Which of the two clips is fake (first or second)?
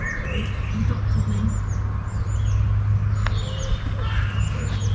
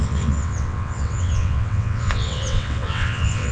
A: second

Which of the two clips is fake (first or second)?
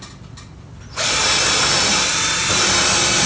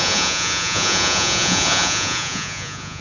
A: second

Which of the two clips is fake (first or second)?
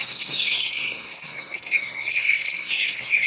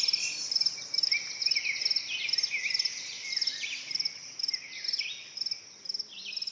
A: first